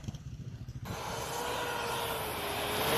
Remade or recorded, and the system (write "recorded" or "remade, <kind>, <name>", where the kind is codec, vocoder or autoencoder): recorded